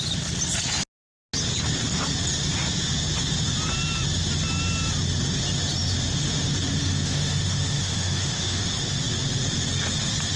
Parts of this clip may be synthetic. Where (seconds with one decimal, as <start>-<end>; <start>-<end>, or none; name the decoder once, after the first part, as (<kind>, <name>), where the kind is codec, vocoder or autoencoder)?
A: 6.8-8.6 (autoencoder, DAC-VAE)